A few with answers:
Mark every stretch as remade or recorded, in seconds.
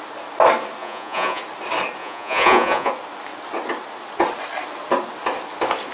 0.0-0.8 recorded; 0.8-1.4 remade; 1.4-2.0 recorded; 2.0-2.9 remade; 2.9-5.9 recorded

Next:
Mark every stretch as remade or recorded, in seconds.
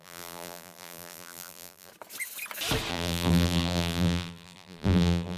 0.0-1.9 remade; 1.9-2.9 recorded; 2.9-5.4 remade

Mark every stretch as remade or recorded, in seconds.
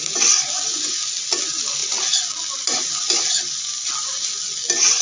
0.0-5.0 recorded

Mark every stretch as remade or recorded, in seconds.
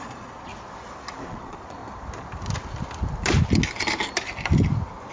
0.0-0.5 remade; 0.5-1.3 recorded; 1.3-1.8 remade; 1.8-5.1 recorded